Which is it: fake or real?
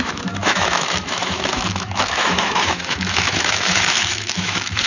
fake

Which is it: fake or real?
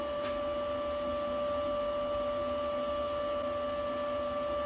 real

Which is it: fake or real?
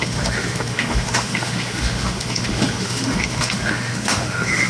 fake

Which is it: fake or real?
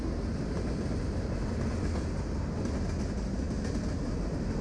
real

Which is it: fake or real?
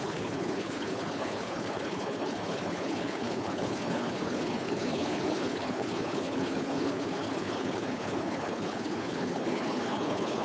fake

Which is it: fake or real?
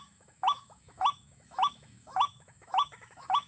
fake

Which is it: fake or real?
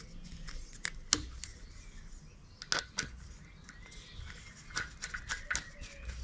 real